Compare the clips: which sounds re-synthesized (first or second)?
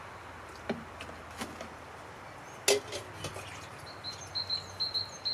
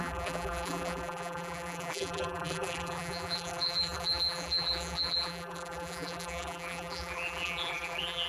second